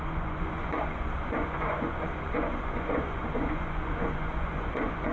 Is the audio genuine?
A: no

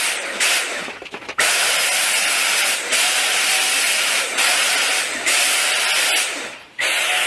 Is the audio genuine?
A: yes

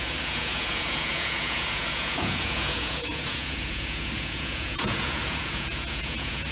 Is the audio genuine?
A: no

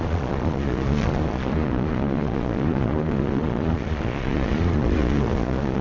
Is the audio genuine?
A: no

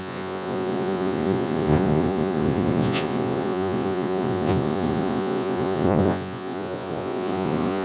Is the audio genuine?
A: no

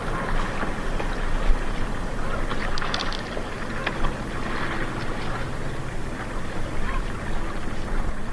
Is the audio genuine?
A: yes